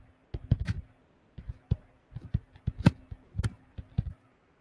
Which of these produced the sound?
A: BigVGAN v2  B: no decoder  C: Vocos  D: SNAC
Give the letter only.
B